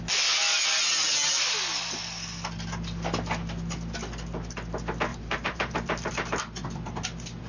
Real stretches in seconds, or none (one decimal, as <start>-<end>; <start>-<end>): 0.0-5.1; 6.1-7.5